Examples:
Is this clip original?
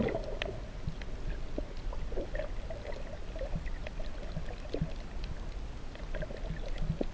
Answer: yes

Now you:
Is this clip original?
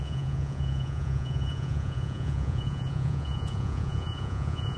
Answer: no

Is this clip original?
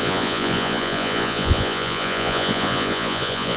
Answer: no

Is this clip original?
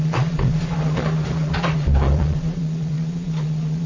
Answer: no